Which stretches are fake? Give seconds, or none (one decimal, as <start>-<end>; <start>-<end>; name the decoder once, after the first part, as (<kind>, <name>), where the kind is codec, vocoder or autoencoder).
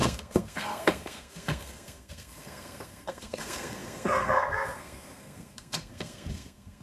0.0-6.8 (codec, SNAC)